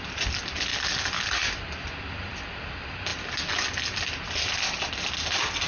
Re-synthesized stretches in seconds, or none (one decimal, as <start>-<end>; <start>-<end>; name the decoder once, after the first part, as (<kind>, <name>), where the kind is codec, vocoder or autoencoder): none